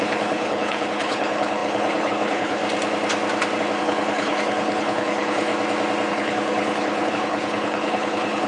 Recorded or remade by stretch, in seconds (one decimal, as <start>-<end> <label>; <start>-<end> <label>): 0.0-2.6 remade; 2.6-3.8 recorded; 3.8-5.5 remade; 5.5-6.1 recorded; 6.1-8.5 remade